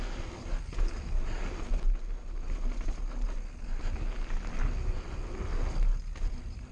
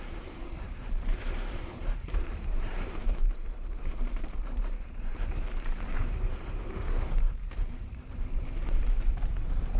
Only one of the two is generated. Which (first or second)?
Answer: second